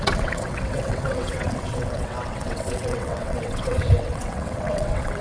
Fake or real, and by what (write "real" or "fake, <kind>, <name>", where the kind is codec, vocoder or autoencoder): fake, vocoder, WaveNeXt